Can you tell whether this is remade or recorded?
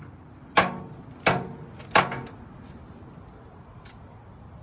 recorded